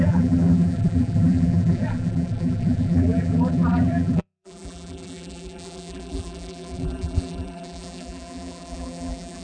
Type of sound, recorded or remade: remade